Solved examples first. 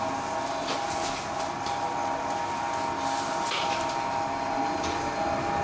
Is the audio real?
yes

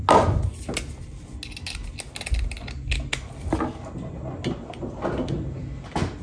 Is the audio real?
yes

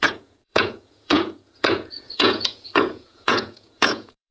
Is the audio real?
no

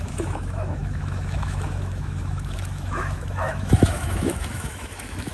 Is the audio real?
no